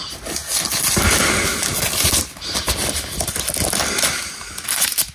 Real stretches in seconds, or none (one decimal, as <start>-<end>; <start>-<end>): 0.0-5.1